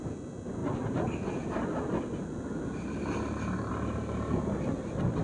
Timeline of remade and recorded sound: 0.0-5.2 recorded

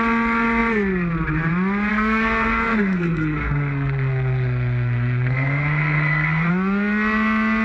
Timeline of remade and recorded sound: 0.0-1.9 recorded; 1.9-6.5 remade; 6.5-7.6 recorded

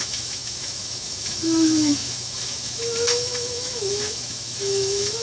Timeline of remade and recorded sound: 0.0-5.2 remade

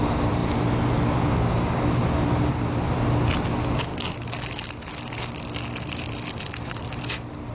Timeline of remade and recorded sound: 0.0-7.5 recorded

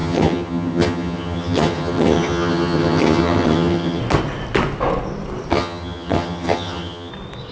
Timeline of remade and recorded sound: 0.0-4.0 remade; 4.0-5.5 recorded; 5.5-7.1 remade; 7.1-7.5 recorded